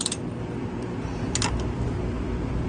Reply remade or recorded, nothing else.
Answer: recorded